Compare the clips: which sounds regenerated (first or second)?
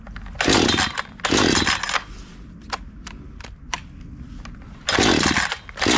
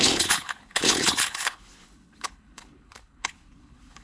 second